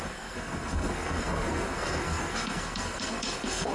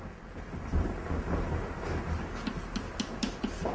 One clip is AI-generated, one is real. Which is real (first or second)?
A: second